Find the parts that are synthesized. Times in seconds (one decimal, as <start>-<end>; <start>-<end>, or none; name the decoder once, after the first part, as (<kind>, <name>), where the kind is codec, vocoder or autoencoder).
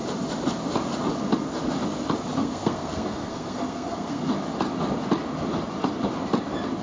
2.4-4.2 (codec, SNAC)